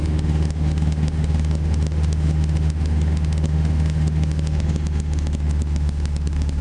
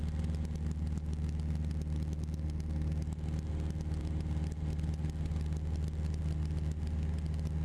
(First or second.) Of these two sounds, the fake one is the first